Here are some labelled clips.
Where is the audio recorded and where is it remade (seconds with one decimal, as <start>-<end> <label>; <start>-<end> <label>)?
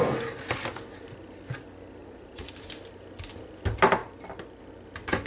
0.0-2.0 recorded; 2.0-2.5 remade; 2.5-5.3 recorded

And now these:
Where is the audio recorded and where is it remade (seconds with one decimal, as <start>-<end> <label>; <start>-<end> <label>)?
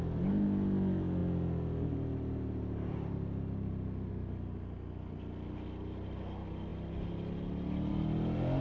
0.0-8.6 recorded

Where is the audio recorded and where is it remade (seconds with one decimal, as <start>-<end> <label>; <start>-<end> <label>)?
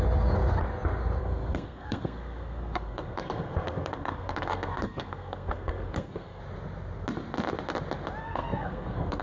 0.0-1.2 recorded; 1.2-6.4 remade; 6.4-8.2 recorded; 8.2-9.2 remade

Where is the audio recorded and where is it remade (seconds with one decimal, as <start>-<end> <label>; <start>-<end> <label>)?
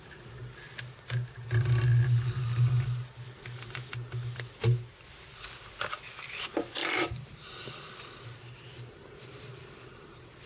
0.0-6.8 recorded; 6.8-10.5 remade